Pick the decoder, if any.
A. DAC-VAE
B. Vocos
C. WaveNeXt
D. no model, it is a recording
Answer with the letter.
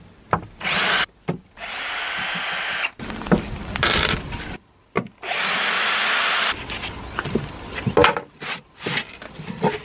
D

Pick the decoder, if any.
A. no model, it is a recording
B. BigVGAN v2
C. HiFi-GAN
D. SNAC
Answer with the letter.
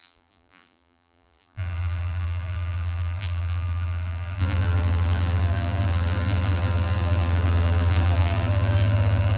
B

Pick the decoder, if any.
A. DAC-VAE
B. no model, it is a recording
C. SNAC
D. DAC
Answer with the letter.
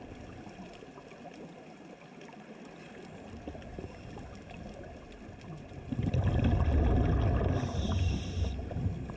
B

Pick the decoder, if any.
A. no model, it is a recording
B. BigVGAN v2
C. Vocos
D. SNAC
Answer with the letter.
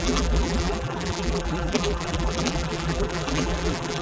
B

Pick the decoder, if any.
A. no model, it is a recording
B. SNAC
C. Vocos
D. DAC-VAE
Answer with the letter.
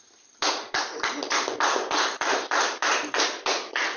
A